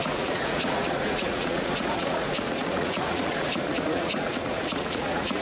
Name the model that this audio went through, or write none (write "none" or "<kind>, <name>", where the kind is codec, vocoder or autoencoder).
vocoder, Vocos